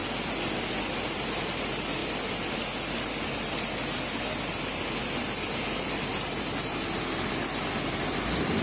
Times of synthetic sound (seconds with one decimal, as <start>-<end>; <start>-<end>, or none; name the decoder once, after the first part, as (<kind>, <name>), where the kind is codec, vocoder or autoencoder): none